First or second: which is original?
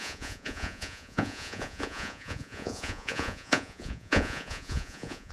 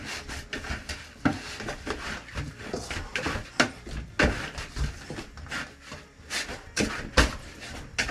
second